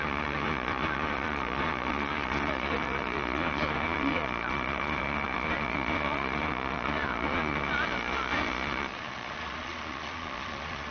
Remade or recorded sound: remade